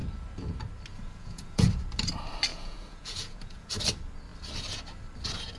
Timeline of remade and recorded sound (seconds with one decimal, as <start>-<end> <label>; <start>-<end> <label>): 0.0-0.9 recorded; 0.9-1.7 remade; 1.7-2.5 recorded; 2.5-3.7 remade; 3.7-5.6 recorded